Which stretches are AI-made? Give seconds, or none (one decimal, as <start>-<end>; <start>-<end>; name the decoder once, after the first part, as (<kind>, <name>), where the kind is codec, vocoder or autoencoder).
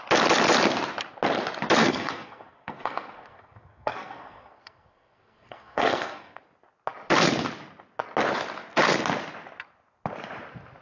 1.8-6.4 (codec, SNAC)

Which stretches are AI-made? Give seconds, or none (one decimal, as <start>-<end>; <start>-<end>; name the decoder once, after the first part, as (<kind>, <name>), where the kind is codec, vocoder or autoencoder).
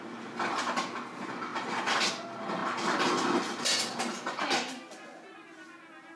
none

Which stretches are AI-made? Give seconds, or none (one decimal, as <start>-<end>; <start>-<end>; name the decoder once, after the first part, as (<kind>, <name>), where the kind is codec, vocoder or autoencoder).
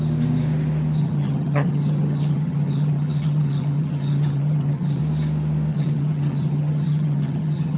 1.0-5.0 (vocoder, HiFi-GAN); 5.7-7.8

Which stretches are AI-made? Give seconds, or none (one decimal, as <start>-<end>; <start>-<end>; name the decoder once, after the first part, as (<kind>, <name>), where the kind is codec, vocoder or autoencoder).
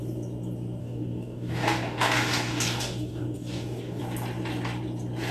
0.8-4.0 (codec, DAC)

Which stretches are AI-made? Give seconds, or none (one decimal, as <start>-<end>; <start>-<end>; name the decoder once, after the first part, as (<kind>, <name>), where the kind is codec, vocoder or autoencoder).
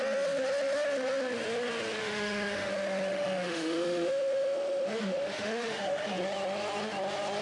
2.0-2.7 (autoencoder, DAC-VAE); 3.1-6.2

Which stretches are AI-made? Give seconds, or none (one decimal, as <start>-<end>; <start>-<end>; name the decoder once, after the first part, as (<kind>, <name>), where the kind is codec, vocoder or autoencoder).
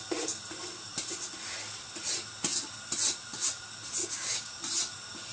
4.0-4.6 (codec, DAC)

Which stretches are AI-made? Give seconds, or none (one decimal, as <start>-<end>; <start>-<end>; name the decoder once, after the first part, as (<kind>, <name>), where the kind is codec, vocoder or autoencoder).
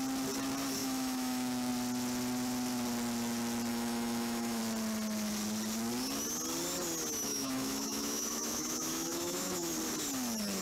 0.8-1.7 (autoencoder, DAC-VAE); 3.7-4.6; 7.3-9.7